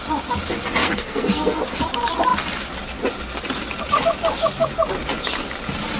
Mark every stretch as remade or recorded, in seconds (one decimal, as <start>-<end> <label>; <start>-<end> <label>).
0.0-0.8 recorded; 0.8-1.6 remade; 1.6-6.0 recorded